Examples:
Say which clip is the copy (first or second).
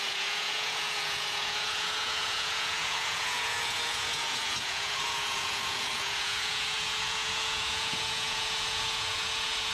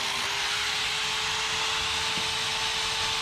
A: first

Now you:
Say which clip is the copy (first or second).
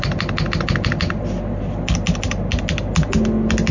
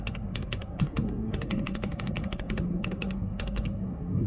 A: second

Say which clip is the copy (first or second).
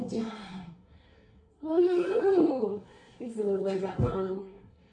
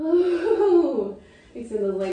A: first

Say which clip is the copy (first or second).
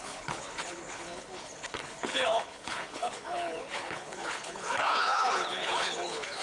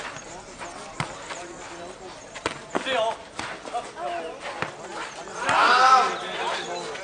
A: first